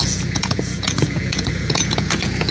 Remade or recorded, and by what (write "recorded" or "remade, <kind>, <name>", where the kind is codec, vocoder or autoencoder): remade, vocoder, Vocos